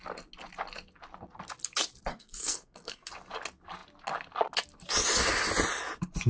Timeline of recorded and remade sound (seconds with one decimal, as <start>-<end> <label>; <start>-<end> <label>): 0.0-2.1 recorded; 2.1-3.1 remade; 3.1-6.3 recorded